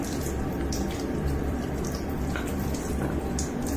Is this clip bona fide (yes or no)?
no